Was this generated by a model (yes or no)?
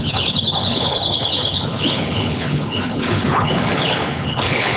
yes